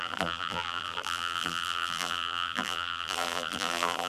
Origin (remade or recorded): remade